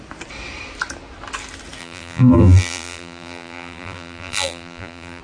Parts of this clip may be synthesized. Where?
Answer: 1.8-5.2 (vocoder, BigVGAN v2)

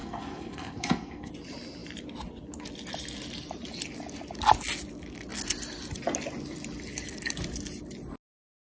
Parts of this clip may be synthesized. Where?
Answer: 0.0-1.3 (codec, SNAC)